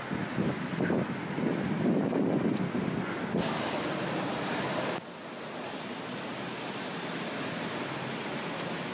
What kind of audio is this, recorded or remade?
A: recorded